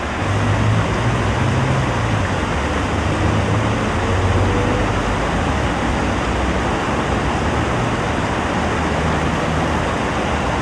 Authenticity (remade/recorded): recorded